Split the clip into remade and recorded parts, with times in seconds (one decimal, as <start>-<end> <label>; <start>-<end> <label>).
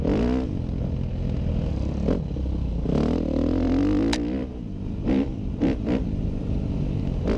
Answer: 0.0-4.5 recorded; 4.5-7.0 remade; 7.0-7.4 recorded